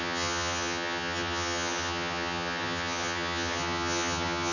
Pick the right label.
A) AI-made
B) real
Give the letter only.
A